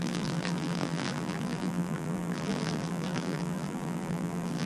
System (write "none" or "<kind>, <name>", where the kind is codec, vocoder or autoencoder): vocoder, BigVGAN v2